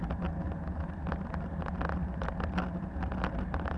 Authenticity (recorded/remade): recorded